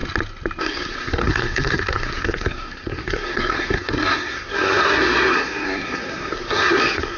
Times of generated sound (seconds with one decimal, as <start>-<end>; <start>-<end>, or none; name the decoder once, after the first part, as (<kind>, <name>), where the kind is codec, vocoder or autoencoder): 0.6-7.2 (codec, SNAC)